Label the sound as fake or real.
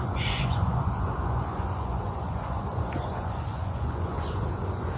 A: fake